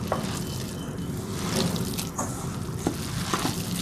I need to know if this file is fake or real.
real